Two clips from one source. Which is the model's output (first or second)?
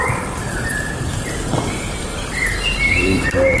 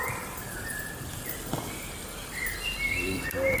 first